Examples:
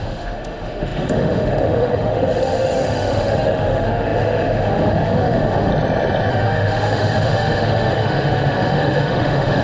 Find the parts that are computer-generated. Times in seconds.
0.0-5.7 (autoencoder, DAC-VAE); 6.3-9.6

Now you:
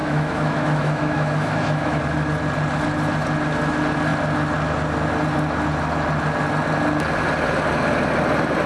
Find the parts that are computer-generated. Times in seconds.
0.0-2.0 (autoencoder, DAC-VAE)

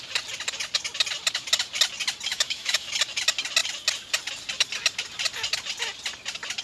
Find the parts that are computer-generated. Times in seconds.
2.3-2.9 (autoencoder, DAC-VAE)

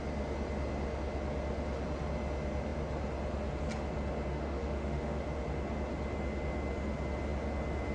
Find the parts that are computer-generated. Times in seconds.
4.3-5.2 (autoencoder, DAC-VAE)